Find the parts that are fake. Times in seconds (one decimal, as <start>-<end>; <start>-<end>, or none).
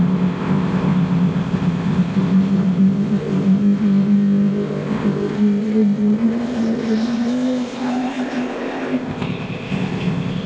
0.0-10.5